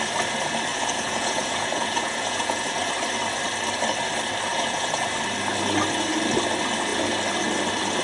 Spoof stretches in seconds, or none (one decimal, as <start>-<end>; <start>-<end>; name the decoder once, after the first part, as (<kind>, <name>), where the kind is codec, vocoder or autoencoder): 0.7-2.9 (vocoder, Vocos); 4.5-5.1